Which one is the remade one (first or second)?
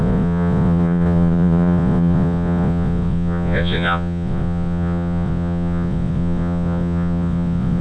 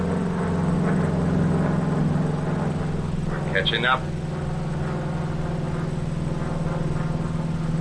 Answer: first